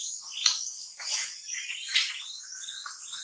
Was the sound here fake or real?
real